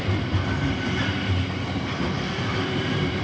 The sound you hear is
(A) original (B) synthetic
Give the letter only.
A